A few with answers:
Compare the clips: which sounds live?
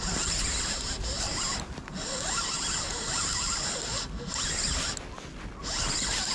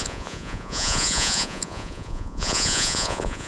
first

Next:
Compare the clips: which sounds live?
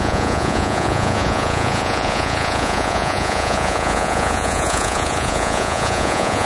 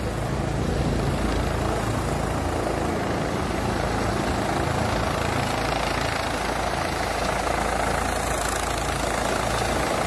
second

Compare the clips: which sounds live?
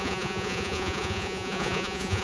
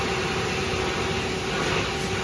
second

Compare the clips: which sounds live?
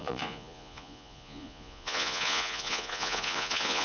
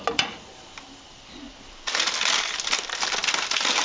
second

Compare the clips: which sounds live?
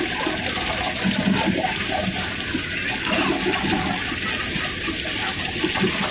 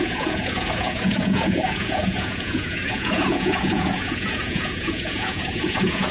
first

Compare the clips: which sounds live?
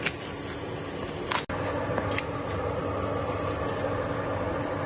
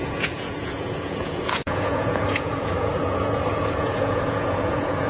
first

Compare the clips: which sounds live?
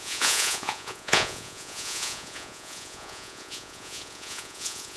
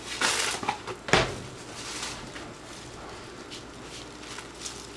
second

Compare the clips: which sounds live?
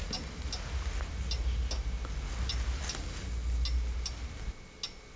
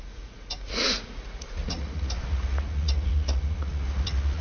first